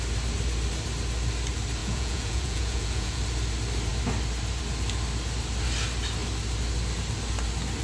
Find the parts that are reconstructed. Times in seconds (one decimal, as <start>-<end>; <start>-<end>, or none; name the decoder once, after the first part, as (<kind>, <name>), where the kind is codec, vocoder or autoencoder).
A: 1.8-3.2 (vocoder, Vocos)